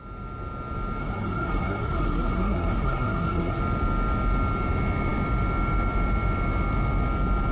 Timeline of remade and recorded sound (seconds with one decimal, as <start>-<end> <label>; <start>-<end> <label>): 0.0-1.0 recorded; 1.0-3.6 remade; 3.6-7.5 recorded